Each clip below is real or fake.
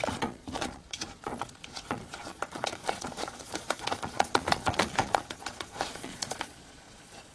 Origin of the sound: fake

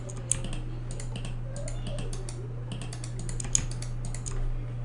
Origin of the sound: real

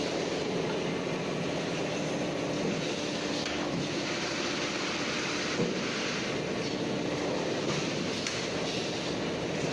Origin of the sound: real